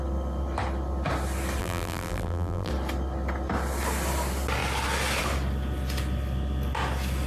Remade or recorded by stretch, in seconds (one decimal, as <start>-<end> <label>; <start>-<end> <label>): 0.0-1.6 recorded; 1.6-2.7 remade; 2.7-7.3 recorded